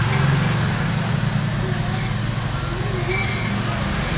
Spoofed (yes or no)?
no